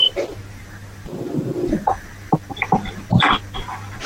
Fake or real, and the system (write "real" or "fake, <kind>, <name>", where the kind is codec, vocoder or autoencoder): fake, vocoder, BigVGAN v2